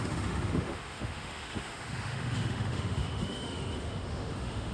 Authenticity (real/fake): fake